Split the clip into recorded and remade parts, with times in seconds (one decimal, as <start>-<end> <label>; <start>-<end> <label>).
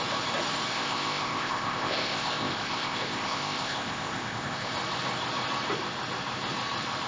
0.0-0.7 recorded; 0.7-4.7 remade; 4.7-7.1 recorded